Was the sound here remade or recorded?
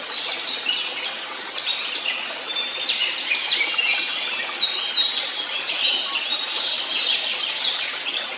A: remade